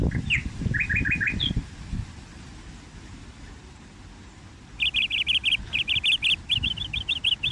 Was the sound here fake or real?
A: real